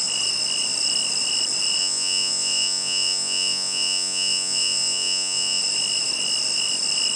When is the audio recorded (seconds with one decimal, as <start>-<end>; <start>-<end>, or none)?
0.0-1.8; 5.6-7.2